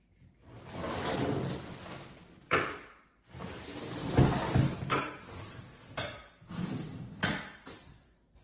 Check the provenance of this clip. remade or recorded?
recorded